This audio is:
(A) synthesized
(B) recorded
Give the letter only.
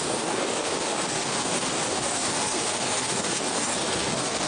A